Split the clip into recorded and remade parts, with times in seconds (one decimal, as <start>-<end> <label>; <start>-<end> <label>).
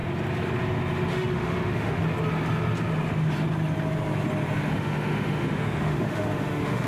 0.0-1.1 recorded; 1.1-2.0 remade; 2.0-4.7 recorded; 4.7-6.9 remade